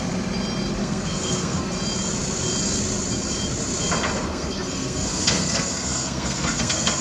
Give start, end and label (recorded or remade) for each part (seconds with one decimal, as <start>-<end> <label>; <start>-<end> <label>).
0.0-0.8 recorded; 0.8-1.7 remade; 1.7-4.3 recorded; 4.3-7.0 remade